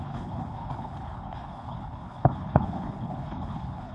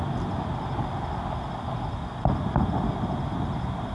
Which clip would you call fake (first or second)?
first